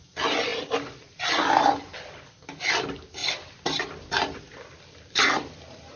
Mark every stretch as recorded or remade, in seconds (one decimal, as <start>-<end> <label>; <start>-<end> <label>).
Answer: 0.0-6.0 recorded